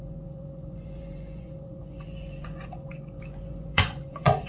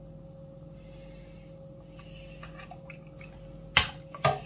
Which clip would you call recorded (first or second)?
second